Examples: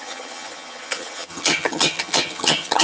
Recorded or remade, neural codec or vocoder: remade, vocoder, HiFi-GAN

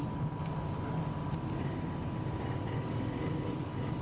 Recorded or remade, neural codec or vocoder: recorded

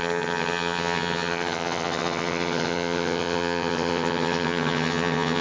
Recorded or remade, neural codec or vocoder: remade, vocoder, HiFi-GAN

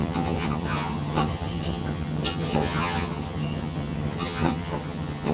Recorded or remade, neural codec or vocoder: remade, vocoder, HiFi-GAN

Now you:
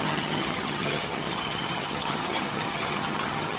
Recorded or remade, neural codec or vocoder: remade, vocoder, HiFi-GAN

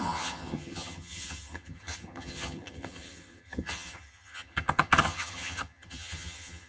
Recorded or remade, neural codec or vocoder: remade, vocoder, HiFi-GAN